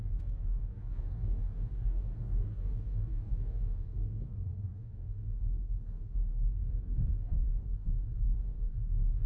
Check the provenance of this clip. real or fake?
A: fake